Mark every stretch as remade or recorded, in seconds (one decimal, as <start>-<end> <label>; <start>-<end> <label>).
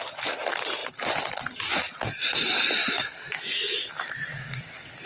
0.0-2.8 recorded; 2.8-3.9 remade; 3.9-5.1 recorded